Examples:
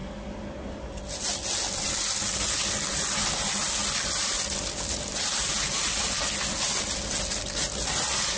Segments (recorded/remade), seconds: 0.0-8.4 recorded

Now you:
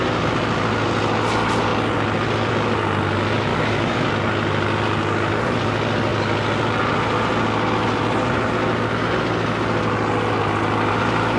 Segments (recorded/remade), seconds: 0.0-3.5 recorded; 3.5-4.1 remade; 4.1-11.4 recorded

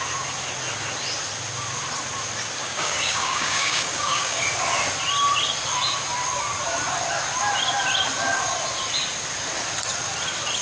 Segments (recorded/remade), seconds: 0.0-2.6 recorded; 2.6-4.4 remade; 4.4-10.6 recorded

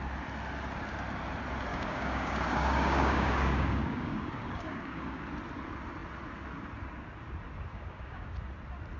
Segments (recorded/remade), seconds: 0.0-1.7 recorded; 1.7-5.2 remade; 5.2-7.7 recorded; 7.7-8.3 remade; 8.3-9.0 recorded